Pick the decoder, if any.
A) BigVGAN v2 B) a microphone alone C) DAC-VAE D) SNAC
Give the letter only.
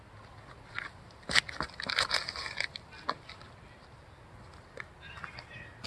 B